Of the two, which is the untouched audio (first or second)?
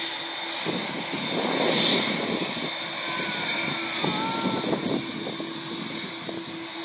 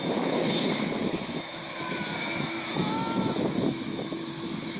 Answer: first